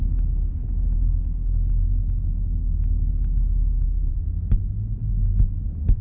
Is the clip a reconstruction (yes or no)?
no